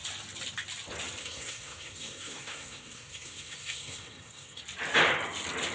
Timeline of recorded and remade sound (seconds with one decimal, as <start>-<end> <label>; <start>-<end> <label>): 0.0-1.2 recorded; 1.2-4.6 remade; 4.6-5.7 recorded